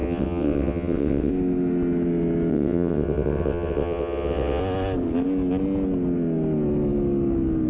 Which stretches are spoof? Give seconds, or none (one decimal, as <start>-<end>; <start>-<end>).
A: 0.0-1.3; 2.5-4.6